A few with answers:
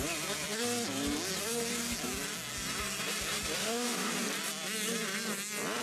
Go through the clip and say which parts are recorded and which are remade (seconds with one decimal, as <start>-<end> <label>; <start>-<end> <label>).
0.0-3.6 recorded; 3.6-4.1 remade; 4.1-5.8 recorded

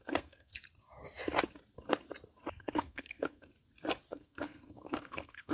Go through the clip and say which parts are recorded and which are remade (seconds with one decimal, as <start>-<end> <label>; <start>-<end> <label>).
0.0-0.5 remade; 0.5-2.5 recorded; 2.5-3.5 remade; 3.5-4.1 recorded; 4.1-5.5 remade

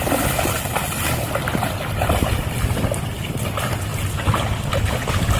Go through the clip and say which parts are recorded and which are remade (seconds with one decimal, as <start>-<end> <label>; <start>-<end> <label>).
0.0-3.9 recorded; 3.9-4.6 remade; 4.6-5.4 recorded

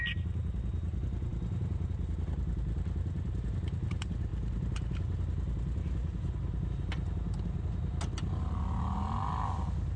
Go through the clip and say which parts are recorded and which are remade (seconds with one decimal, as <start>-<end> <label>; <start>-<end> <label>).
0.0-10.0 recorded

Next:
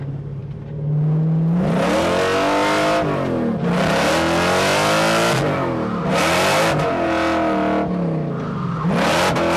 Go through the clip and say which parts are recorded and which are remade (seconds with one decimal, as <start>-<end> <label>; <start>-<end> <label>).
0.0-9.6 recorded

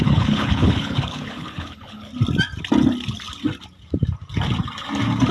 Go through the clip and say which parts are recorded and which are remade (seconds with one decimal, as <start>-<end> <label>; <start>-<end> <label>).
0.0-2.1 remade; 2.1-5.3 recorded

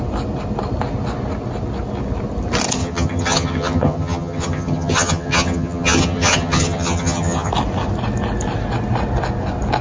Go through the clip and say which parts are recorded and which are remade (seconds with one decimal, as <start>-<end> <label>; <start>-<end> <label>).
0.0-2.8 recorded; 2.8-7.5 remade; 7.5-9.8 recorded

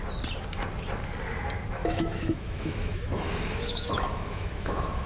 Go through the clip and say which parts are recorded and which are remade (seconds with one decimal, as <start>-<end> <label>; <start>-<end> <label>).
0.0-1.8 recorded; 1.8-5.1 remade